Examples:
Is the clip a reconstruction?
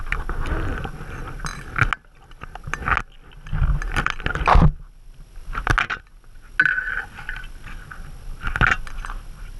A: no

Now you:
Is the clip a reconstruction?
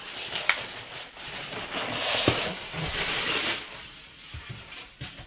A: no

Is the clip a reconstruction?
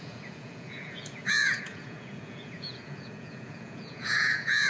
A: yes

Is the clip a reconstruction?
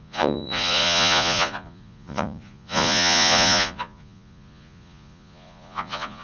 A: yes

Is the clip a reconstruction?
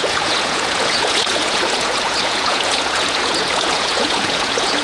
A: yes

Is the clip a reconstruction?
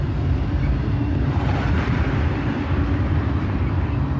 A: no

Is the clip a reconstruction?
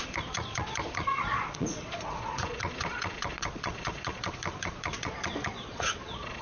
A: yes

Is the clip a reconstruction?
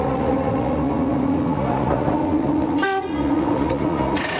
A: yes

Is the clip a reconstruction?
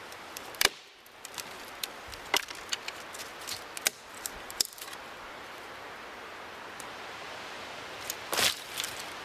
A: no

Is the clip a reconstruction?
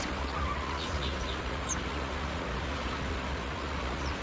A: yes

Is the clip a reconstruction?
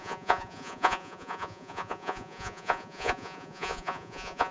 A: yes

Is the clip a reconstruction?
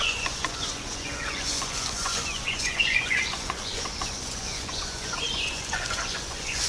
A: yes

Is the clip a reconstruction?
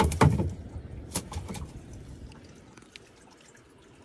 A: no